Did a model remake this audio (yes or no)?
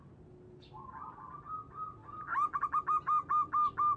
no